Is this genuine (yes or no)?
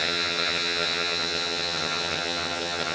no